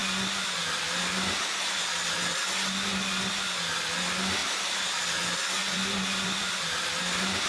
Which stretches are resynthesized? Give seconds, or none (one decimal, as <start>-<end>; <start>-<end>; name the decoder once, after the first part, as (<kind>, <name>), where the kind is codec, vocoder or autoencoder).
4.4-5.0 (vocoder, BigVGAN v2); 5.6-7.5